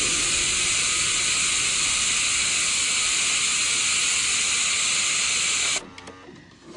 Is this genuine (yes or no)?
yes